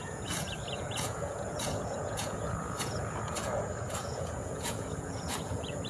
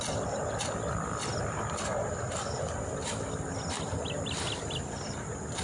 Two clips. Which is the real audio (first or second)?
second